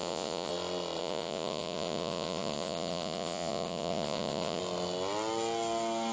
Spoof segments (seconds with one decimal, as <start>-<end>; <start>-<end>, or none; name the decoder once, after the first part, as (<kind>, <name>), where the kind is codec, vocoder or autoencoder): 0.0-0.5 (vocoder, Vocos); 1.0-4.6